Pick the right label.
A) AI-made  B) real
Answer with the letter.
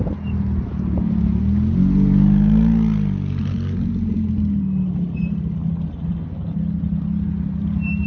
B